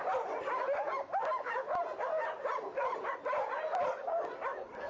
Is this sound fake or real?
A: real